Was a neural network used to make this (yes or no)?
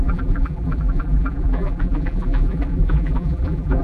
yes